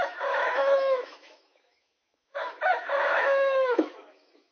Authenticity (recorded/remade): remade